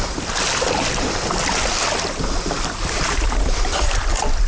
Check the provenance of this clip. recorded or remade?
recorded